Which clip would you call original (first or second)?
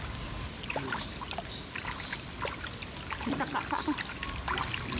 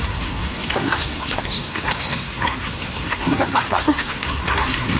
first